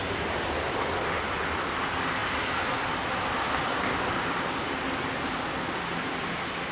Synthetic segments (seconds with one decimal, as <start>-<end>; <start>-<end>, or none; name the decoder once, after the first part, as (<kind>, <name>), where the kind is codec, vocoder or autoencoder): none